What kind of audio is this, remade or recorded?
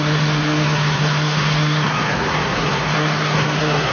remade